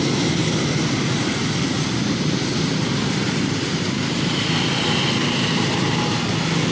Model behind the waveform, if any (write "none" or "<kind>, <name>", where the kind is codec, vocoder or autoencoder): none